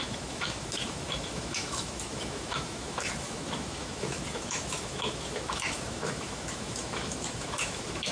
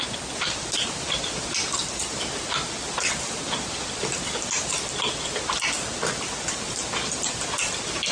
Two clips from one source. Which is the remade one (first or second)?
first